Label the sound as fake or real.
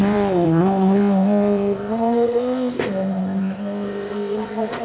fake